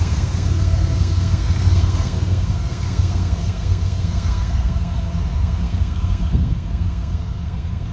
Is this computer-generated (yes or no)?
yes